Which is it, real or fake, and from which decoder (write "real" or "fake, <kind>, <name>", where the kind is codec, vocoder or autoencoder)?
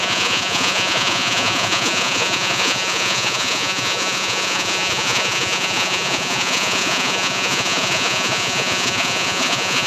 fake, vocoder, Vocos